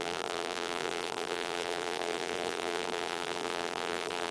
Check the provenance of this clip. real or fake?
fake